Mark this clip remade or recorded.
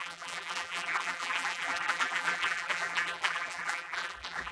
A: remade